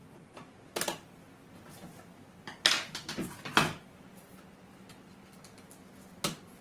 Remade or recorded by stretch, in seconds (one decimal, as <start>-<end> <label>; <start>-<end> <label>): 0.0-6.6 recorded